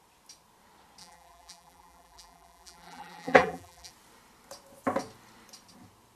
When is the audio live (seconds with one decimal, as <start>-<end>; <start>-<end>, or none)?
0.0-1.0; 3.9-6.2